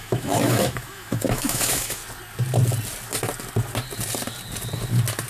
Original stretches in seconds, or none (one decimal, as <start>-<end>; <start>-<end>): 2.0-5.3